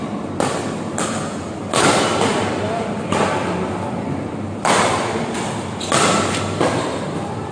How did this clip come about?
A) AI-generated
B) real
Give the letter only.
B